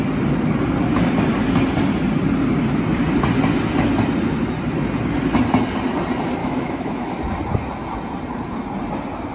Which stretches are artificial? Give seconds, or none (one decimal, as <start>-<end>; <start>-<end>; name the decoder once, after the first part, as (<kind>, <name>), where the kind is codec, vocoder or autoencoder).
6.4-7.2 (autoencoder, DAC-VAE)